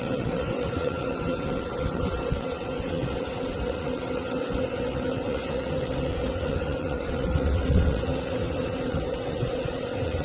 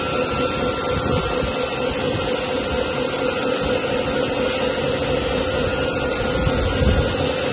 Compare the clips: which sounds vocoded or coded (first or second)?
first